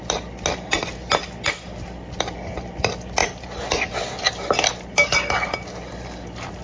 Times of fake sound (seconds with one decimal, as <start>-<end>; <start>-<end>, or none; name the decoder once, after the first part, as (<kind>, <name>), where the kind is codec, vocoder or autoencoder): none